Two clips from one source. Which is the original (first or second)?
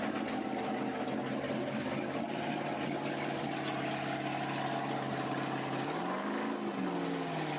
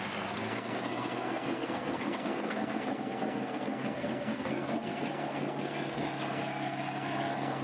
first